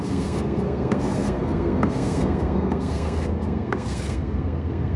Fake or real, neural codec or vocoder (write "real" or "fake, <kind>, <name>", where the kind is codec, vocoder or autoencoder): fake, codec, SNAC